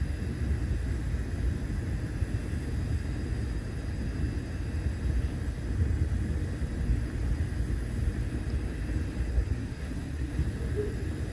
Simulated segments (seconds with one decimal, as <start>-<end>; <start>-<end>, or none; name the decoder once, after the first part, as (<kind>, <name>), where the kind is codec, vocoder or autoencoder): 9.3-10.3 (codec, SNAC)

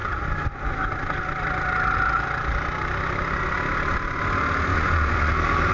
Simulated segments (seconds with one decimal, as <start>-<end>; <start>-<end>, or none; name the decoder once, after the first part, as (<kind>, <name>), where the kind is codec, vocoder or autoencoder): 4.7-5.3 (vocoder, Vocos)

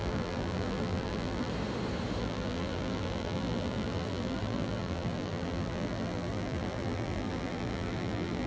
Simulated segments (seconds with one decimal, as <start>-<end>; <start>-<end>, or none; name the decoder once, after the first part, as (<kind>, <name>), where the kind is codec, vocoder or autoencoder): 0.0-1.5 (vocoder, BigVGAN v2); 2.2-8.5